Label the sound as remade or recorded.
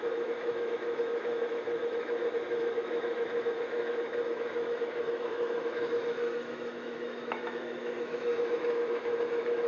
remade